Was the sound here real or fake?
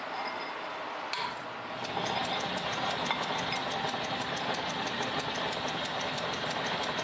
real